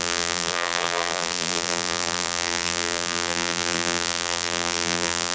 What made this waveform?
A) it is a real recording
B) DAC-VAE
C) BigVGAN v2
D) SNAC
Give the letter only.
C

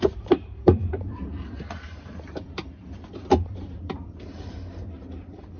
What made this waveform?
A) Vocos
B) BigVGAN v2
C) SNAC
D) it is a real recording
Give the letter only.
B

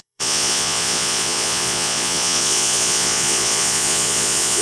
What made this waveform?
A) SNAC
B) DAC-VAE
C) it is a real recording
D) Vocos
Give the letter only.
D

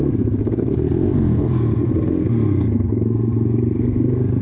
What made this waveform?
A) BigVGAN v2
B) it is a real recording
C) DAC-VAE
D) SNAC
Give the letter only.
D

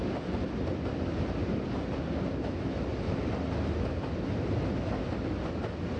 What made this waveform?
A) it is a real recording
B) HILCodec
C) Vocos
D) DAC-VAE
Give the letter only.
A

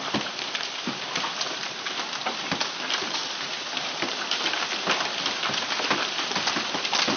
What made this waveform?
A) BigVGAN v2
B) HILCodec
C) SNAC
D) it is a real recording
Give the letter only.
A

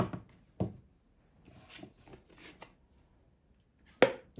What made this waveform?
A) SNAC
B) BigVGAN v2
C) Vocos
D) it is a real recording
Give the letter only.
D